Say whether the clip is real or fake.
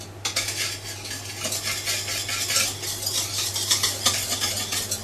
real